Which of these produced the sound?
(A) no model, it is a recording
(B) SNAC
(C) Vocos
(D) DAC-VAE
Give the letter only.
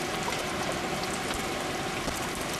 A